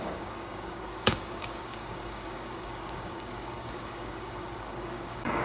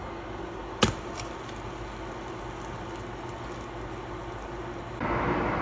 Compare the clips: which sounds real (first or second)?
second